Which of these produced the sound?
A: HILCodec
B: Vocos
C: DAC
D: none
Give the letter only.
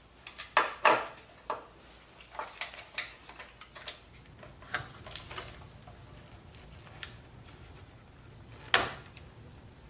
D